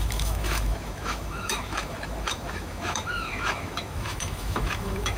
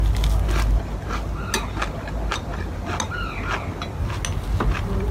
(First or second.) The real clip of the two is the second